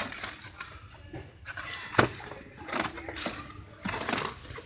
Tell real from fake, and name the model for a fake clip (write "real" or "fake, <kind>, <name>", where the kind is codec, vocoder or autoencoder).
real